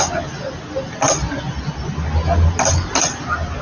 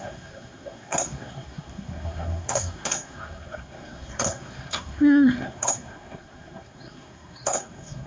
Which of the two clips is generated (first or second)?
second